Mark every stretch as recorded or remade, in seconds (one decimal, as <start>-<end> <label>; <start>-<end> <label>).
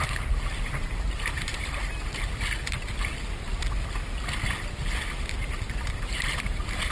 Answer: 0.0-1.8 remade; 1.8-5.9 recorded; 5.9-6.9 remade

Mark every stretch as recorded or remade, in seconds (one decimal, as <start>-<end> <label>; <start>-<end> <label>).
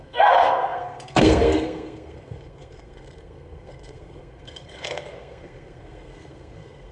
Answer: 0.0-6.9 remade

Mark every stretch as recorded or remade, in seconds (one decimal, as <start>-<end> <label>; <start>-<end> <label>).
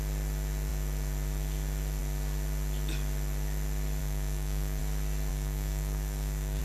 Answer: 0.0-4.0 recorded; 4.0-4.8 remade; 4.8-5.3 recorded; 5.3-6.6 remade